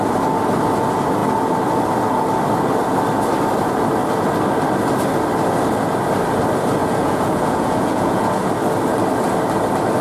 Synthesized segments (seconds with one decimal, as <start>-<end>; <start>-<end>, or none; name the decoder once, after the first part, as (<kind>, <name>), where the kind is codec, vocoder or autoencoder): 6.8-8.5 (vocoder, Vocos)